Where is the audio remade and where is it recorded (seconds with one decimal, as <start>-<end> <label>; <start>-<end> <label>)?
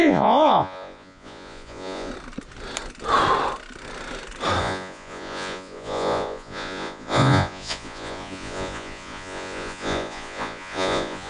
0.0-2.1 remade; 2.1-4.6 recorded; 4.6-11.3 remade